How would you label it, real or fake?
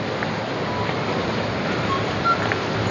real